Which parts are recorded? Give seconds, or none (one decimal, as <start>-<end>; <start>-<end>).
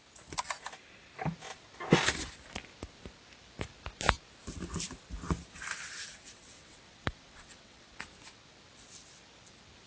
0.0-6.1; 7.9-9.9